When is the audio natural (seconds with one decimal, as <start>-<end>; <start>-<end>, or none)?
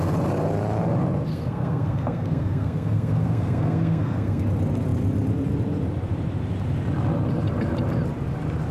0.0-1.3; 4.4-8.7